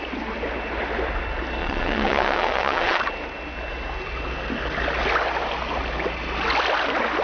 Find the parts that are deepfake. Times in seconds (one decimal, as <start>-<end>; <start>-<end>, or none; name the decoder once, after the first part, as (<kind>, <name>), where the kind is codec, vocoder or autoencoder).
1.6-3.0 (vocoder, WaveNeXt)